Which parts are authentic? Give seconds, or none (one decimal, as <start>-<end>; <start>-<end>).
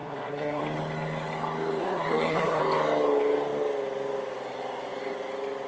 0.6-1.8; 2.6-5.7